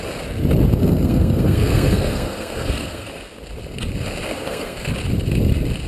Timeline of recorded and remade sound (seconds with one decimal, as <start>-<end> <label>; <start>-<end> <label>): 0.0-0.8 recorded; 0.8-3.1 remade; 3.1-4.3 recorded; 4.3-4.9 remade; 4.9-5.9 recorded